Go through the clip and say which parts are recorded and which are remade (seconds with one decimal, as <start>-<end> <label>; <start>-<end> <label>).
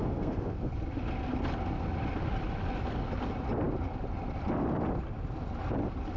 0.0-0.7 remade; 0.7-6.2 recorded